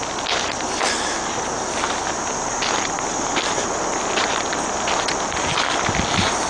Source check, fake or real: real